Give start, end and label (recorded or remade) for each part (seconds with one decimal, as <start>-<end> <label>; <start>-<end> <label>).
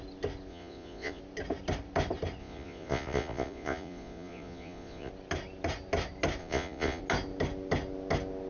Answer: 0.0-0.5 recorded; 0.5-1.2 remade; 1.2-2.4 recorded; 2.4-5.1 remade; 5.1-6.4 recorded; 6.4-7.0 remade; 7.0-8.5 recorded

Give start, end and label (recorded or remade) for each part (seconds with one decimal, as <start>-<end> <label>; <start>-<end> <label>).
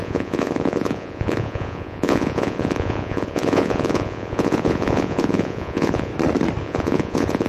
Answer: 0.0-6.1 remade; 6.1-6.6 recorded; 6.6-7.5 remade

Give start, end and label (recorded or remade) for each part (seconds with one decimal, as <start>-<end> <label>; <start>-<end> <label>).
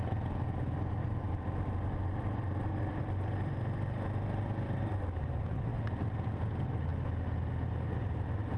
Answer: 0.0-1.0 recorded; 1.0-4.8 remade; 4.8-8.6 recorded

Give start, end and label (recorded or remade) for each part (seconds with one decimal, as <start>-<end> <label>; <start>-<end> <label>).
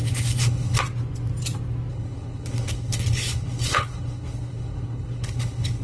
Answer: 0.0-0.8 remade; 0.8-1.9 recorded; 1.9-5.8 remade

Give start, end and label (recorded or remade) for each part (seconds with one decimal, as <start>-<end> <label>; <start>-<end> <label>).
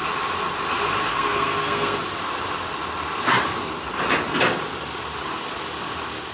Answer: 0.0-1.1 recorded; 1.1-2.0 remade; 2.0-6.3 recorded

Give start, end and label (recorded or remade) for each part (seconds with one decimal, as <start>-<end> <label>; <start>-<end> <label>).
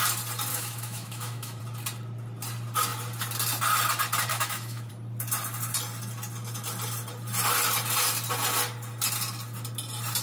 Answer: 0.0-0.5 recorded; 0.5-1.6 remade; 1.6-4.3 recorded; 4.3-4.9 remade; 4.9-10.2 recorded